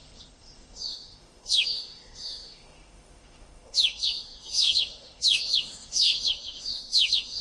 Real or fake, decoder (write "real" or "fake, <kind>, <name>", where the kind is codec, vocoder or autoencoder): fake, autoencoder, DAC-VAE